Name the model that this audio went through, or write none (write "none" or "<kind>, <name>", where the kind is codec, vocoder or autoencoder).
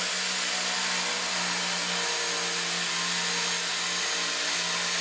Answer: none